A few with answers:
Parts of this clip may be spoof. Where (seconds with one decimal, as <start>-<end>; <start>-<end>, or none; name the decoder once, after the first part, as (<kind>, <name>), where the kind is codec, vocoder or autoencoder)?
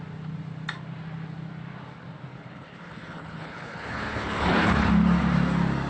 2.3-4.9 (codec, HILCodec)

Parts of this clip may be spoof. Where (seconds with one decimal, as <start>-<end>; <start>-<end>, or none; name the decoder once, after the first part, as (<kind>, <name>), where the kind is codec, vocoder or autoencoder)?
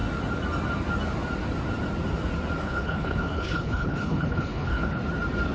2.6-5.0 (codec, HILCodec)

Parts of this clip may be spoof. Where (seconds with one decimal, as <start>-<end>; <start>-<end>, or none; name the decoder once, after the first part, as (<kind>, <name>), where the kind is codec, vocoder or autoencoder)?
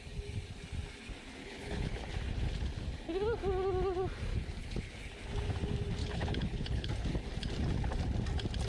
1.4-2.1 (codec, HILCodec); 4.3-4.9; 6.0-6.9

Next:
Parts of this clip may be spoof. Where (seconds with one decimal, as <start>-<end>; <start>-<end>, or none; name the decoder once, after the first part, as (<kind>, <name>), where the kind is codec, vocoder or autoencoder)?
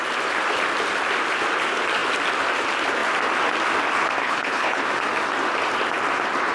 4.2-4.8 (codec, HILCodec)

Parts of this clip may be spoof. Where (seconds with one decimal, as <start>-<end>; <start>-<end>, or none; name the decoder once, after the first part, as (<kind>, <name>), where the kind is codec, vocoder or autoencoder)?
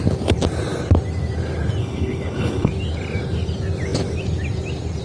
1.8-2.7 (codec, HILCodec)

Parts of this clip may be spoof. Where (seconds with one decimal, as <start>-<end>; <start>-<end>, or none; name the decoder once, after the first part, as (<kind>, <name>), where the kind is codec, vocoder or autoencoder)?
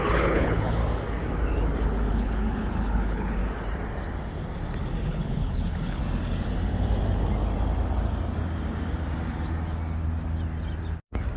0.0-0.8 (codec, HILCodec); 2.1-3.4; 5.1-6.0